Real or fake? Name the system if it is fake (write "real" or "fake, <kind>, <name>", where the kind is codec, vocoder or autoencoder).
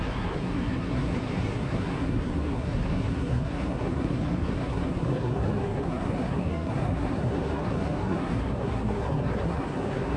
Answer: fake, codec, SNAC